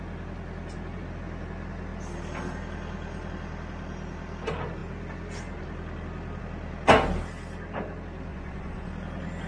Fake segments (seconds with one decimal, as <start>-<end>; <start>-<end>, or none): 8.3-8.9